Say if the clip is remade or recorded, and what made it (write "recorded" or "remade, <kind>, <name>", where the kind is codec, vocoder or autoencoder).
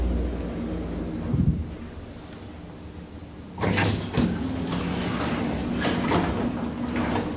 recorded